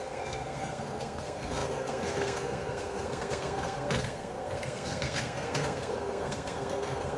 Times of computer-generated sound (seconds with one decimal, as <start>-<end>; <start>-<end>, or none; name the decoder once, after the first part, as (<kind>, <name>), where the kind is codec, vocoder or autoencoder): 0.0-7.2 (codec, SNAC)